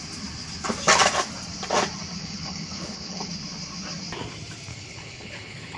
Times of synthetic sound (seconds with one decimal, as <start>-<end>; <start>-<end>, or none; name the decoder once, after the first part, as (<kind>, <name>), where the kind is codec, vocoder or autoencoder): 2.2-3.3 (codec, HILCodec); 4.7-5.8